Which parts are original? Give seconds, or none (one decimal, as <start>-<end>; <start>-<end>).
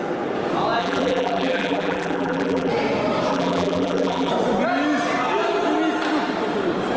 0.0-0.8; 2.7-3.3; 4.3-7.0